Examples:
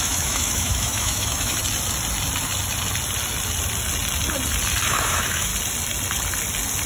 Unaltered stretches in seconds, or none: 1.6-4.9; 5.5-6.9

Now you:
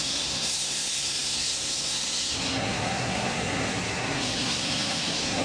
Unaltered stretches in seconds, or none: none